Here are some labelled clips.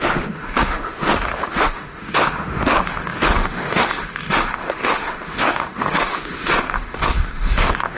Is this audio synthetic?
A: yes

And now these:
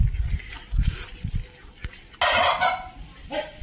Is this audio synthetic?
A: no